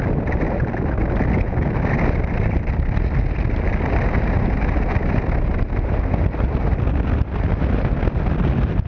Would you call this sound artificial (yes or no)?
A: no